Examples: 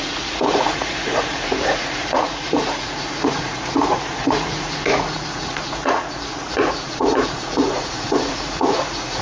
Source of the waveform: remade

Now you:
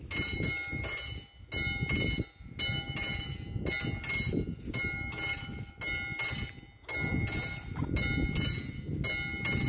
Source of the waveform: recorded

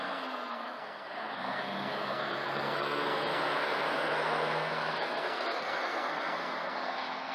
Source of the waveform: remade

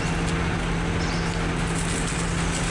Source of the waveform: recorded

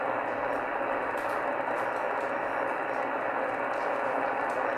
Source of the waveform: recorded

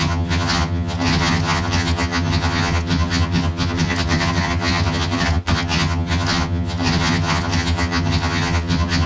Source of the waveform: remade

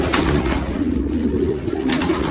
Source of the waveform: remade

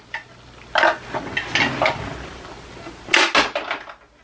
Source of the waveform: recorded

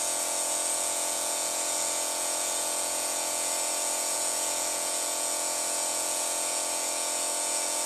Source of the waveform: remade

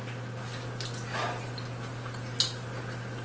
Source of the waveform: recorded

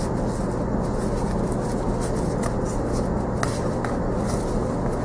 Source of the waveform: recorded